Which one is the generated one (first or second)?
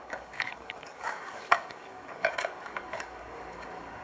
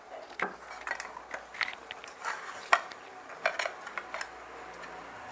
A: first